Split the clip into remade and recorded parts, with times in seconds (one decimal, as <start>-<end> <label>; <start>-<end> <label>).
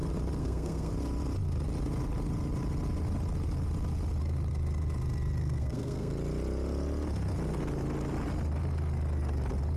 0.0-0.4 recorded; 0.4-0.9 remade; 0.9-5.4 recorded; 5.4-6.1 remade; 6.1-9.8 recorded